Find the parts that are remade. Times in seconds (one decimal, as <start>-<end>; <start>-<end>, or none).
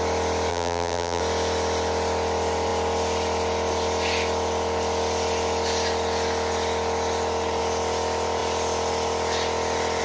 0.5-1.2